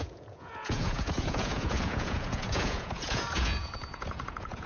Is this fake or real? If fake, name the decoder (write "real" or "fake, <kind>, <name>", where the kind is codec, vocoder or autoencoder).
fake, vocoder, Vocos